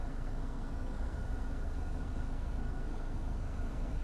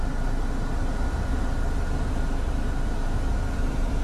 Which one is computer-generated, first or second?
first